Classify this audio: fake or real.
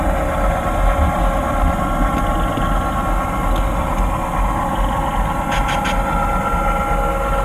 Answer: real